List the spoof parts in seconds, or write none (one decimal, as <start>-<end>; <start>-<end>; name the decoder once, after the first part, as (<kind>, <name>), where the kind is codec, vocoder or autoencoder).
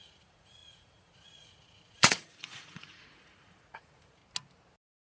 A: 0.0-4.2 (vocoder, Vocos)